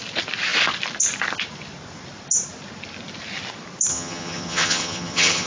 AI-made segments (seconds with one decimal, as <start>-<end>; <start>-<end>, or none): 3.9-5.5